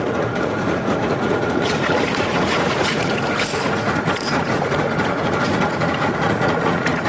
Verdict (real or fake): fake